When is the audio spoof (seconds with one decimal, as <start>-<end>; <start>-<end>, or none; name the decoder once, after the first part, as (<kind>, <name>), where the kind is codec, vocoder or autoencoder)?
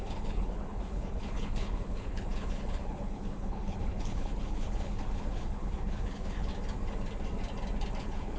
0.0-6.5 (codec, HILCodec); 8.0-8.4